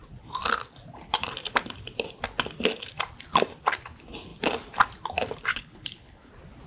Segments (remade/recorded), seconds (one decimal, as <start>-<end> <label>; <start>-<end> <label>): 0.0-5.5 recorded; 5.5-6.3 remade; 6.3-6.7 recorded